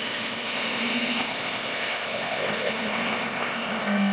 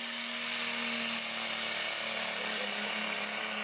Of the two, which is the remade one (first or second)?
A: first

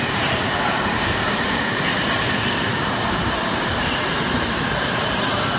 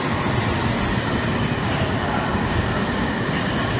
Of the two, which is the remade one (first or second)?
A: first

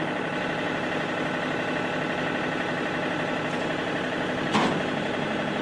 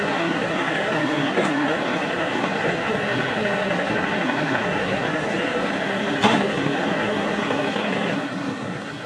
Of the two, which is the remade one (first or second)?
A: second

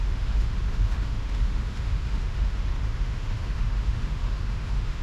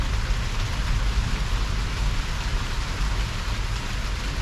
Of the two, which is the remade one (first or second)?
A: first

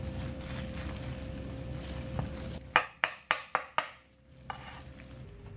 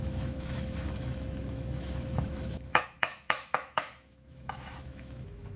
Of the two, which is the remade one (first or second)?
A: second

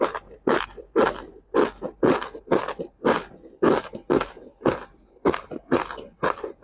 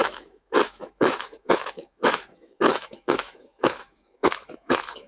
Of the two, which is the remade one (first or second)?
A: second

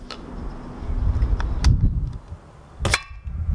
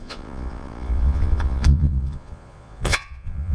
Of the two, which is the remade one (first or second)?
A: second